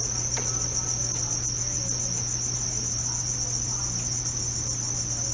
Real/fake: real